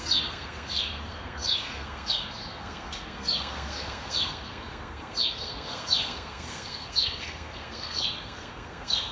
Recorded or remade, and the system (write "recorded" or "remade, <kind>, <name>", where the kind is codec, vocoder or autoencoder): remade, codec, SNAC